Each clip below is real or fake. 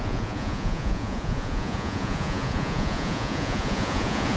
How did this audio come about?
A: fake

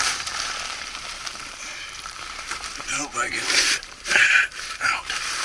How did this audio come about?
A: fake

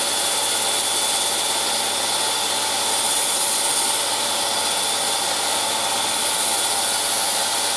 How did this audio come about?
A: real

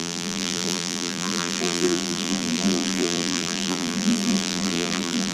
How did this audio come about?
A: fake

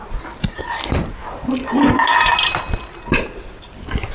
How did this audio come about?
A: real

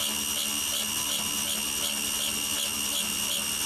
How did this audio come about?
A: real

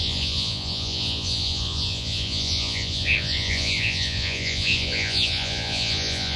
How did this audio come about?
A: fake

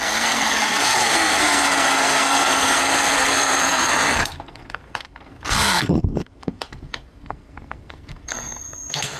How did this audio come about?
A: fake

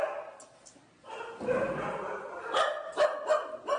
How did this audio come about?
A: real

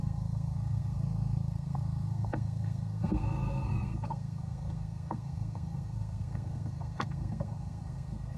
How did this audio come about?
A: fake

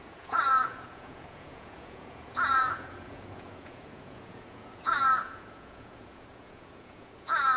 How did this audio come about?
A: fake